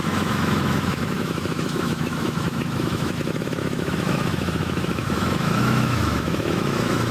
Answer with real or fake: fake